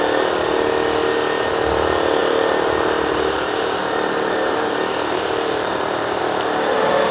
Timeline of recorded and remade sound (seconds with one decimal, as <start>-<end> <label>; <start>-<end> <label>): 0.0-2.2 recorded; 2.2-6.2 remade; 6.2-7.1 recorded